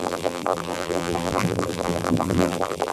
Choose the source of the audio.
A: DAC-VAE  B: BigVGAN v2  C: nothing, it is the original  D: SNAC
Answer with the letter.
B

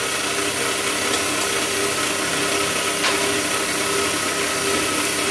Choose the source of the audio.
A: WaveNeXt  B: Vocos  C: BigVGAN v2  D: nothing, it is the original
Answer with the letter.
D